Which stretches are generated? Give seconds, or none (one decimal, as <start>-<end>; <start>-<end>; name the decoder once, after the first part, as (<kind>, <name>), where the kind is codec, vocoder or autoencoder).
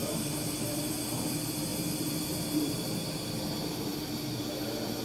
none